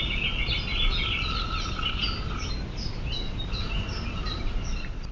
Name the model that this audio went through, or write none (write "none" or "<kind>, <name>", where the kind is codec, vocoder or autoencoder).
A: none